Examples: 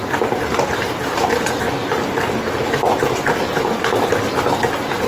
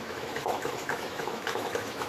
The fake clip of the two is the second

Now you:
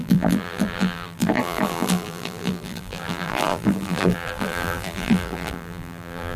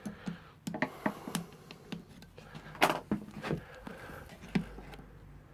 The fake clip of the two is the first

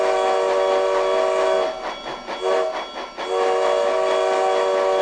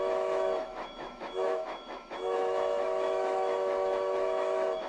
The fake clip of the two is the second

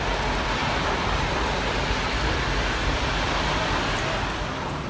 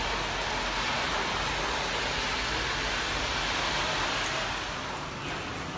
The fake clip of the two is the first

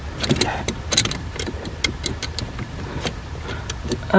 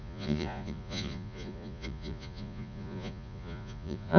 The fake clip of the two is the second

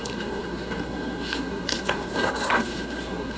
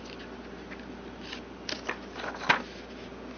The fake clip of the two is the first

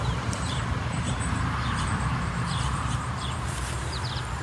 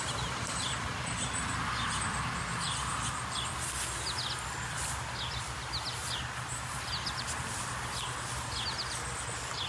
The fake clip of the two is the first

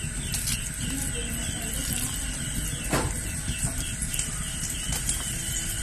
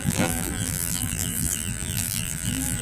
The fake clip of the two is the second